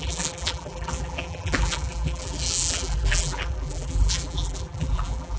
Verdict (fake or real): fake